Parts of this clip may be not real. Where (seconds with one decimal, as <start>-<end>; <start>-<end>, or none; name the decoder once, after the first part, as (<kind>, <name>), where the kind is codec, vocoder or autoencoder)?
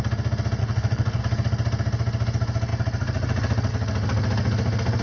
0.6-1.2 (codec, HILCodec)